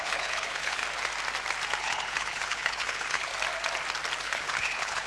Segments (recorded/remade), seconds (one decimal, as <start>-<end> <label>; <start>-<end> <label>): 0.0-0.8 remade; 0.8-1.8 recorded; 1.8-3.3 remade; 3.3-4.2 recorded; 4.2-5.1 remade